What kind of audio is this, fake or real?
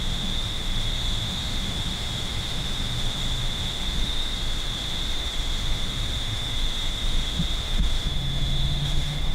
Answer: fake